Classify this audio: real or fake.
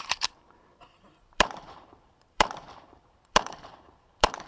fake